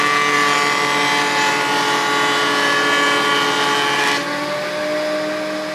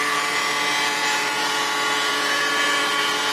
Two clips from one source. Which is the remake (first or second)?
second